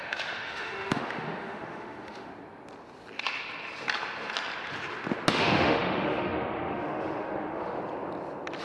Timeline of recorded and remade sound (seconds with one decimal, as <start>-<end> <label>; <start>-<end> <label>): 0.0-2.3 remade; 2.3-5.3 recorded; 5.3-7.8 remade; 7.8-8.6 recorded